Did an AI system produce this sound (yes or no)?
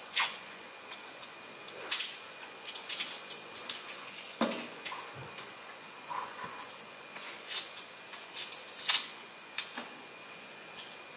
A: yes